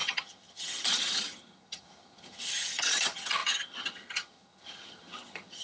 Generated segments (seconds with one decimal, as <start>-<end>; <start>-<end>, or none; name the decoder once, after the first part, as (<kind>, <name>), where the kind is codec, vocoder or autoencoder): 0.0-5.6 (vocoder, HiFi-GAN)